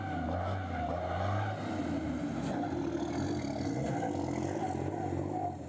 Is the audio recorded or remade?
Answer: recorded